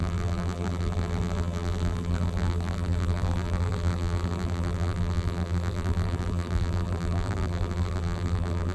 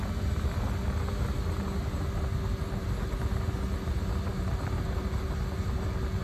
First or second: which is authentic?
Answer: second